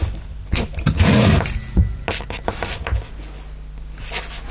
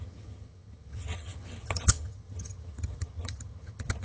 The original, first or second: first